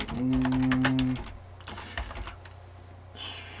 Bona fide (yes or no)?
yes